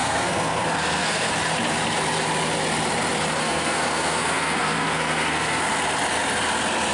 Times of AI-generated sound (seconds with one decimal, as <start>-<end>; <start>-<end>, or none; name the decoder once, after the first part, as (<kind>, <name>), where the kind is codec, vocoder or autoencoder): 0.0-1.3 (codec, SNAC); 3.4-5.6